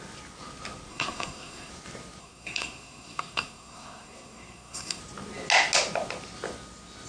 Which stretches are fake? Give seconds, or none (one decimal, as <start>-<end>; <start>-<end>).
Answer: 0.9-1.7; 2.2-5.0